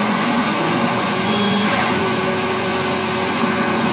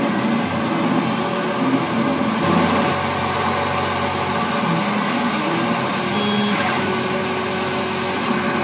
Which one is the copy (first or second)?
first